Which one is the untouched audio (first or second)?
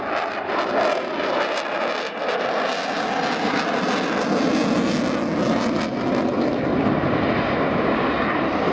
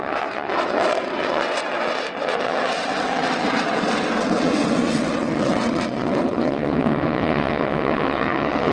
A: first